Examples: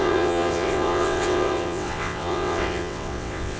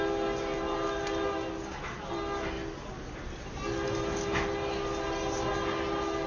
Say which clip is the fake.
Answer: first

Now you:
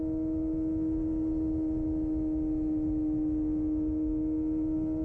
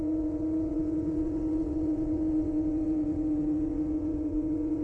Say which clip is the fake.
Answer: second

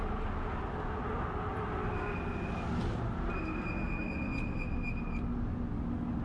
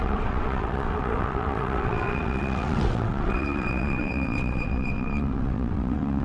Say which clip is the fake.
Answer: second